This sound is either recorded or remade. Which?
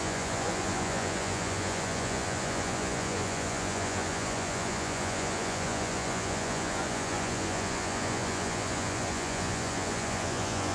remade